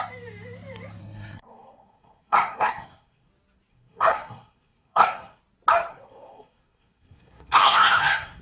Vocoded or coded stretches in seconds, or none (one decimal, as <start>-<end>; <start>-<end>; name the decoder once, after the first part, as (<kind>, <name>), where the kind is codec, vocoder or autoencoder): 1.0-3.3 (codec, SNAC); 3.7-5.4; 5.9-8.4